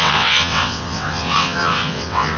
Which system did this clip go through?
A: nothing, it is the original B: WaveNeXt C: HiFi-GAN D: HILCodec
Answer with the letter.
B